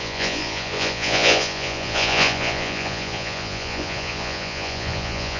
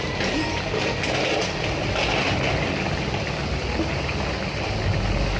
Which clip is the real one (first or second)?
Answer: second